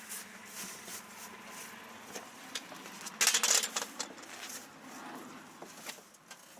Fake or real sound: real